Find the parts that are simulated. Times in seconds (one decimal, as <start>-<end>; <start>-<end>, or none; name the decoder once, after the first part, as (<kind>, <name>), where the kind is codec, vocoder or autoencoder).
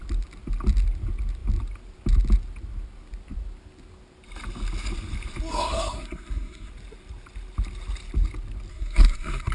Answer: 5.5-6.7 (codec, SNAC); 8.7-9.5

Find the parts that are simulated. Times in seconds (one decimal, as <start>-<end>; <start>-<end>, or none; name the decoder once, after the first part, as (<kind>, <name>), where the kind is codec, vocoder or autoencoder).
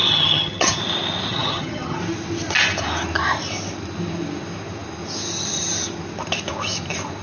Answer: 0.0-0.8 (vocoder, HiFi-GAN); 1.3-2.0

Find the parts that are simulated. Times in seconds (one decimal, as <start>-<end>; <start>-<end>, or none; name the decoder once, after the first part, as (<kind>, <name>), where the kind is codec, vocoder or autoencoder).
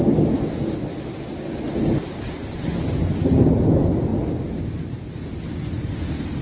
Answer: none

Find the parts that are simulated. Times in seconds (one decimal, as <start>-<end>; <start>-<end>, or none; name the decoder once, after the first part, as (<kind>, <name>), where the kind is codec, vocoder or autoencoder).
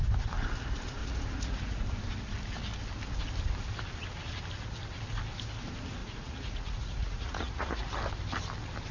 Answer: 1.0-1.8 (vocoder, Vocos); 6.0-7.9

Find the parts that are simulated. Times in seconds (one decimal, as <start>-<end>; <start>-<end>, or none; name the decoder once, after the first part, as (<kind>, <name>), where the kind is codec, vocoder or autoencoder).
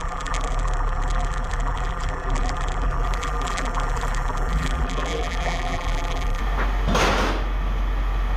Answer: 0.0-6.4 (vocoder, BigVGAN v2)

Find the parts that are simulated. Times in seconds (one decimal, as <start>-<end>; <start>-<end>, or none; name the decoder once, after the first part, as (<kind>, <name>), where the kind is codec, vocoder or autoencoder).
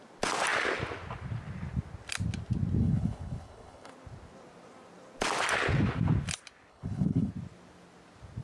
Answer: 2.8-3.9 (codec, HILCodec); 6.7-7.3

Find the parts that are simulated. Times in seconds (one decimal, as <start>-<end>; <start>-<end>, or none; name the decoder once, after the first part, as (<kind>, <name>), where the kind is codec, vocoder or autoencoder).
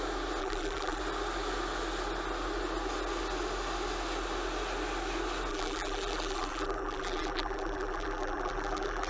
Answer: 0.4-1.0 (vocoder, BigVGAN v2); 5.5-9.1